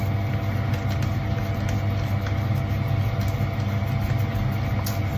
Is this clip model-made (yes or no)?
no